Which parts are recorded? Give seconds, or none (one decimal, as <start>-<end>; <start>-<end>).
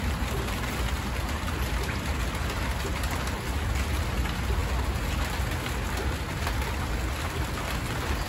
0.0-8.3